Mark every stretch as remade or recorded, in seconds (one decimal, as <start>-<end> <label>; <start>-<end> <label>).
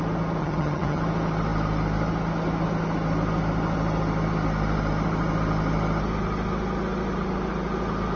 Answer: 0.0-0.4 recorded; 0.4-1.0 remade; 1.0-8.2 recorded